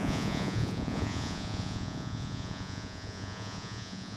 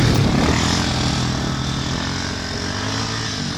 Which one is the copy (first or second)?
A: first